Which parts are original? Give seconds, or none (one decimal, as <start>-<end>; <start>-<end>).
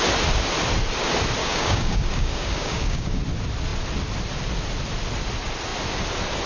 0.0-1.4; 3.2-6.5